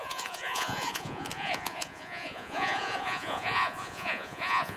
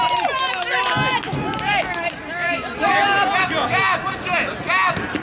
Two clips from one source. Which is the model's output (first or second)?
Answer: first